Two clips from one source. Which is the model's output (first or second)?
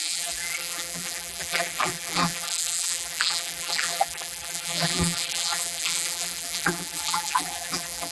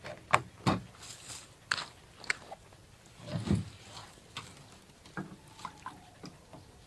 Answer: first